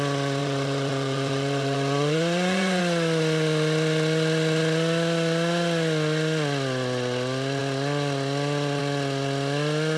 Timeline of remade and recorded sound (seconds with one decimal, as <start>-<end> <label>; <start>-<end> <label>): 0.0-0.4 recorded; 0.4-2.8 remade; 2.8-10.0 recorded